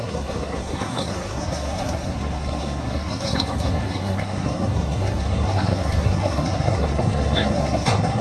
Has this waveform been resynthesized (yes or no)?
yes